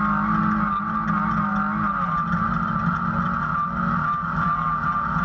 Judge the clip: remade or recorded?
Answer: recorded